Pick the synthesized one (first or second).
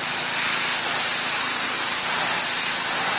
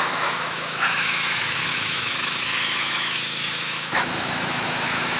second